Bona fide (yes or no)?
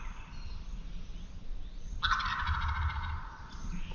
yes